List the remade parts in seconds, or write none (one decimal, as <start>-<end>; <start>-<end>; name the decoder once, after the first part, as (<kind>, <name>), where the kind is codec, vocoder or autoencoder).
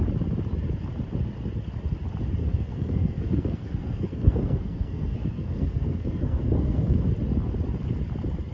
2.4-7.1 (codec, SNAC)